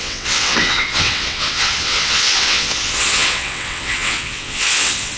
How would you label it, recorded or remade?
remade